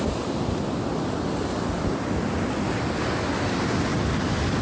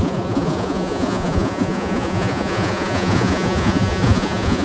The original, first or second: first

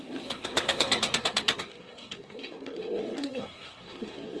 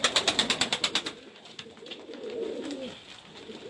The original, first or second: second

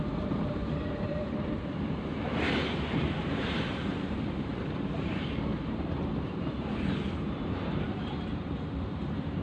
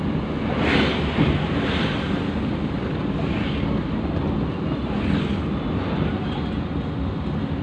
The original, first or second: second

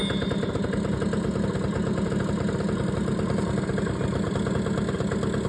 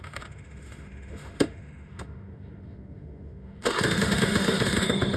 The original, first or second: first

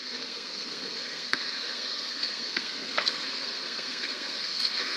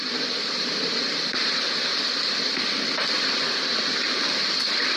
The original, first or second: second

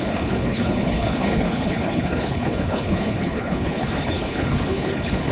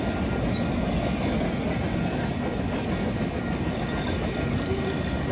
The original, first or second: second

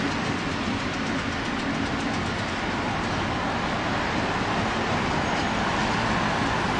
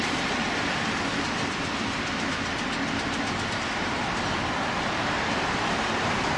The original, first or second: first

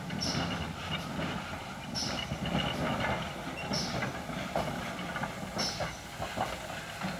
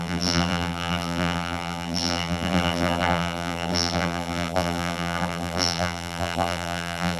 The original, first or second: first